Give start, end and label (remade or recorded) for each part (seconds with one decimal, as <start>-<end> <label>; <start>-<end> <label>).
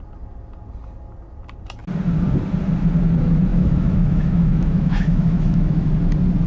0.0-3.5 recorded; 3.5-5.9 remade; 5.9-6.5 recorded